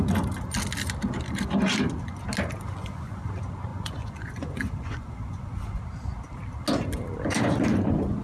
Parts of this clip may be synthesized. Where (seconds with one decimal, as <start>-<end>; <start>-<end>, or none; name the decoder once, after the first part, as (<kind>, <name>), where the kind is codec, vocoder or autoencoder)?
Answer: 2.8-3.3 (vocoder, Vocos); 3.7-5.8